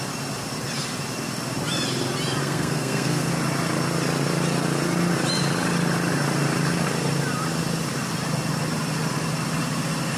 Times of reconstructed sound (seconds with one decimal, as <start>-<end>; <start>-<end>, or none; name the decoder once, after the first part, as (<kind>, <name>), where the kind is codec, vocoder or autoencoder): 2.4-3.3 (codec, SNAC)